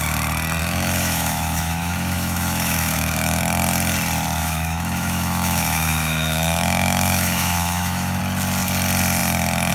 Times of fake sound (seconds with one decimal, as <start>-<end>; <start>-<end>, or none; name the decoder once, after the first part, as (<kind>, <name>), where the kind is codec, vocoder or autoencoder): 0.6-3.4 (autoencoder, DAC-VAE); 4.4-8.2